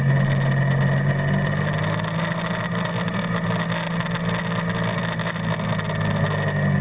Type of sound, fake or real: real